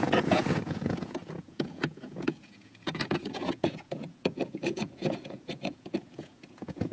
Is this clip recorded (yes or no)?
no